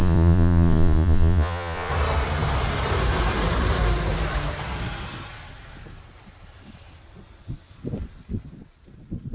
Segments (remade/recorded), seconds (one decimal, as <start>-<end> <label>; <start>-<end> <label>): 0.0-1.9 remade; 1.9-9.3 recorded